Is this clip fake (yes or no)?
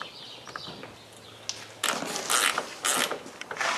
no